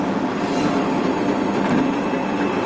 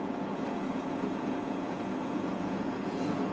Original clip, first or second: first